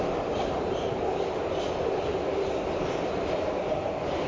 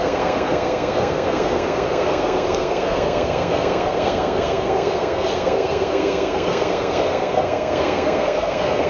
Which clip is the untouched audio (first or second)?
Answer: first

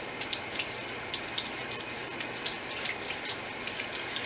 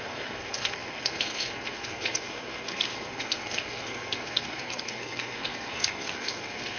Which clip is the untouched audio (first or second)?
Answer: first